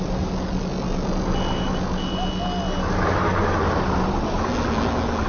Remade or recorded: recorded